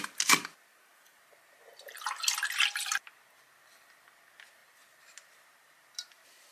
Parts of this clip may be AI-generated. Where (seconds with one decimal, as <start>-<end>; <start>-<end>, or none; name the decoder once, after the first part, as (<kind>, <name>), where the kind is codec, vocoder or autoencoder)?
4.6-6.5 (vocoder, BigVGAN v2)